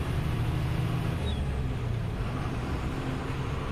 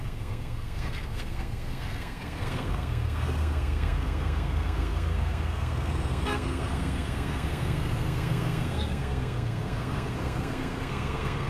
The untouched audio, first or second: first